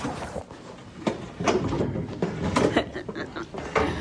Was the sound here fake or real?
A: real